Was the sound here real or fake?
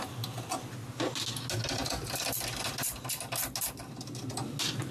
real